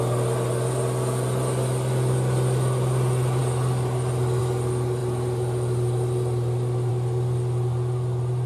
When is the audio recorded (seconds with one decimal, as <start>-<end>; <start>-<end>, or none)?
0.0-8.5